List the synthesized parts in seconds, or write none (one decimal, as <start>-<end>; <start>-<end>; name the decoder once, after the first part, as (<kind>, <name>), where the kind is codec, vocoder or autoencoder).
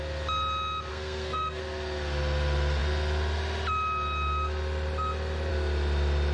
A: 0.9-1.6 (codec, SNAC)